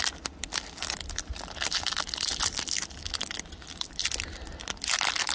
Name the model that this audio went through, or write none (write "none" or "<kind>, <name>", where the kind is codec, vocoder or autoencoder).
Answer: none